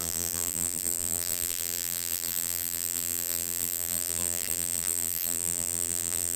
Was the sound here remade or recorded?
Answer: remade